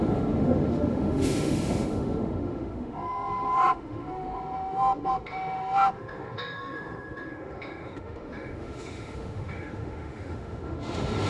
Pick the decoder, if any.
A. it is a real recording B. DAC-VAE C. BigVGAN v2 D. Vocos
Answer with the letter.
B